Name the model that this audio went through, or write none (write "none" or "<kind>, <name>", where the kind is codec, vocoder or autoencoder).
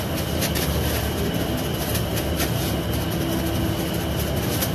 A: none